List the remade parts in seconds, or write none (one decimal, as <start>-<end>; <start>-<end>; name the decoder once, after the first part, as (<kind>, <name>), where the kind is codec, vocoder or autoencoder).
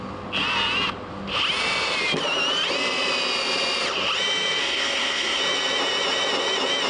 4.6-5.4 (codec, SNAC)